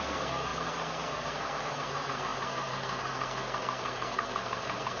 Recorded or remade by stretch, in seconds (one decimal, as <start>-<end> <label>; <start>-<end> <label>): 0.0-5.0 remade